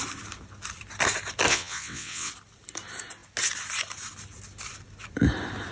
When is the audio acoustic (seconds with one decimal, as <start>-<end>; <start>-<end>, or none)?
0.0-1.5; 2.3-5.7